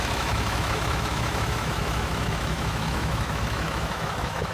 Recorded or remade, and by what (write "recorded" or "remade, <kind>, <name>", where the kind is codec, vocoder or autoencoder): remade, autoencoder, DAC-VAE